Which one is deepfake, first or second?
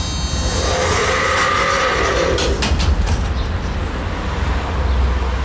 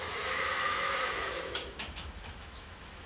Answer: second